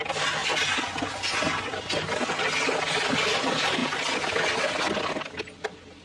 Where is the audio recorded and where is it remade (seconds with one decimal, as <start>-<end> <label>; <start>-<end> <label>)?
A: 0.0-6.0 recorded